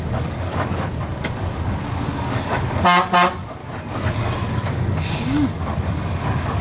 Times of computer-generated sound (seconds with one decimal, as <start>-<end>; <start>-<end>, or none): 0.0-3.6; 4.5-6.6